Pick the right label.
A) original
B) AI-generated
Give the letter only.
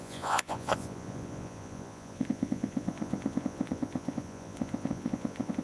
B